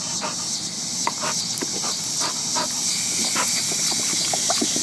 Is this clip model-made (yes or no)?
no